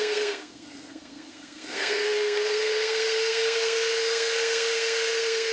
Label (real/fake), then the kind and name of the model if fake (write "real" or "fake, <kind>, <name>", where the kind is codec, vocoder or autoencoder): fake, codec, SNAC